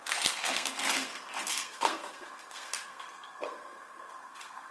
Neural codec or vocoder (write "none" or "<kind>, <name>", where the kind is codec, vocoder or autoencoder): codec, SNAC